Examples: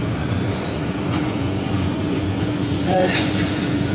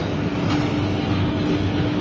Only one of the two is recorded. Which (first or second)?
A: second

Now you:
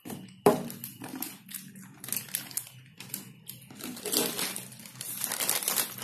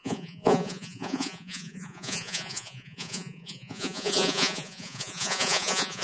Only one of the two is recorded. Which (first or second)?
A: first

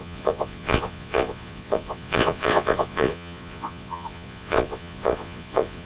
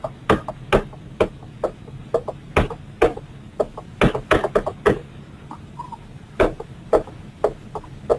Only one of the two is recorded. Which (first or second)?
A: second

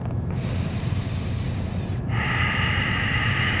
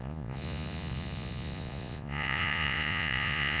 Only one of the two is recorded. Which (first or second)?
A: first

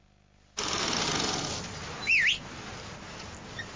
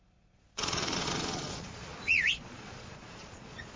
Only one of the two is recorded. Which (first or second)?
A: first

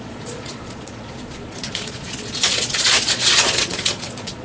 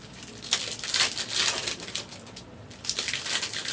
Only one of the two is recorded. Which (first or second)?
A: second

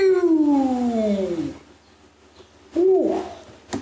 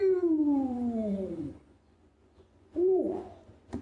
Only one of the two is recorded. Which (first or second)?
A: first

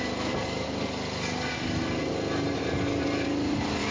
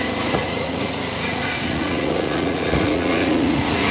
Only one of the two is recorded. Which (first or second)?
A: first